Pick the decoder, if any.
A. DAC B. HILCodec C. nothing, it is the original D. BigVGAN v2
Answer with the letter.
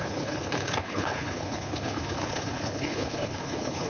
B